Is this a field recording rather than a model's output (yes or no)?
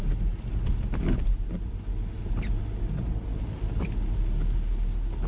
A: yes